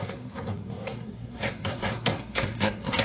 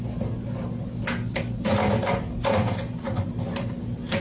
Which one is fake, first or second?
first